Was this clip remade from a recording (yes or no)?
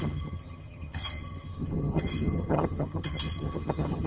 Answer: yes